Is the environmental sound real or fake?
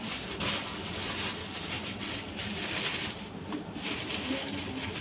real